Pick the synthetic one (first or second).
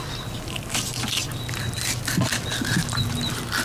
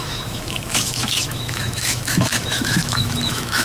second